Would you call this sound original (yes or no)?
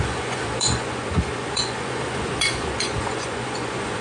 no